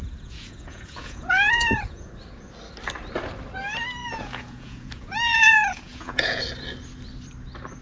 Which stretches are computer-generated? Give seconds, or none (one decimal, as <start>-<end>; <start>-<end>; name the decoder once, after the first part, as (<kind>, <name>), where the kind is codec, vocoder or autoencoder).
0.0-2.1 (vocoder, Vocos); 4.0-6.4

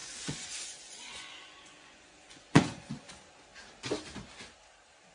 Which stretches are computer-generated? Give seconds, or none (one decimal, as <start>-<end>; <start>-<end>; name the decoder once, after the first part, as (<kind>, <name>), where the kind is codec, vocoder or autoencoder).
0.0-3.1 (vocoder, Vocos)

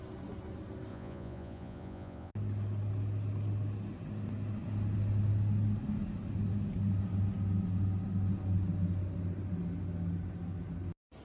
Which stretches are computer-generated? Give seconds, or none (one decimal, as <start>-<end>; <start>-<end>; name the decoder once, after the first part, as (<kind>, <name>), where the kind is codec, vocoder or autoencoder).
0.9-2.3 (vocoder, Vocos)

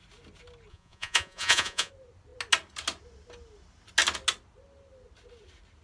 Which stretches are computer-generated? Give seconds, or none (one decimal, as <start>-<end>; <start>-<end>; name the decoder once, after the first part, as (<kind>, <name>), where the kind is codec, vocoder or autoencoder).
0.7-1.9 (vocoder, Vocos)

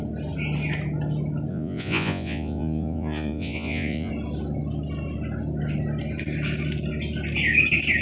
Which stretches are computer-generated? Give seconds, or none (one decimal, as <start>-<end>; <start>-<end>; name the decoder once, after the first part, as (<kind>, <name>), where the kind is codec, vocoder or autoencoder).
1.5-4.1 (vocoder, Vocos)

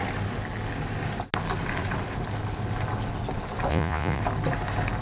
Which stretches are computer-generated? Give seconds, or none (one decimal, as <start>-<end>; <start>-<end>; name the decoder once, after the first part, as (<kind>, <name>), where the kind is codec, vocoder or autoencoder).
3.7-4.2 (vocoder, Vocos)

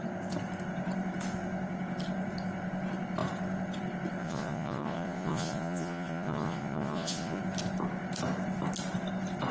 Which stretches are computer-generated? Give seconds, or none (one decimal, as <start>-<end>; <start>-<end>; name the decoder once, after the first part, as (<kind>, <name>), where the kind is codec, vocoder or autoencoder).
4.2-7.4 (vocoder, Vocos)